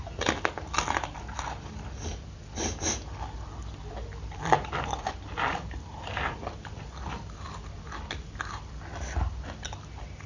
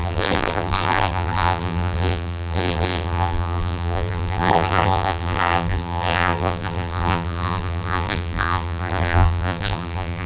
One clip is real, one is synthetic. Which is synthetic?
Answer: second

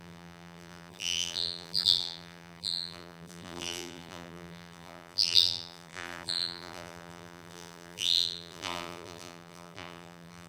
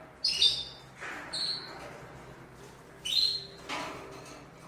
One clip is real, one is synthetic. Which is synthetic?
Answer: first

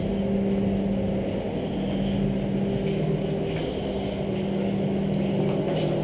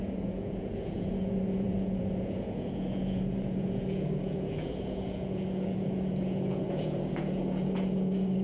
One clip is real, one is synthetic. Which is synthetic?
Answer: second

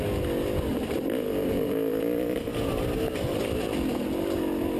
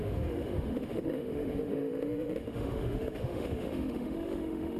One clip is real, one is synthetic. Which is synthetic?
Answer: second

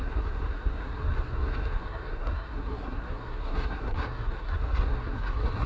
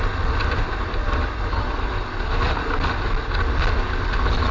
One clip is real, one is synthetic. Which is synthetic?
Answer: first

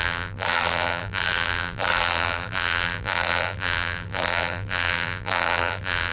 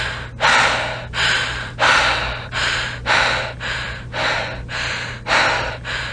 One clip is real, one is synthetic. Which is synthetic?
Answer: first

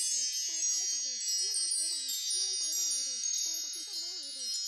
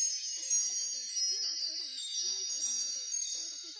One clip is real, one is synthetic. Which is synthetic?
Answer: second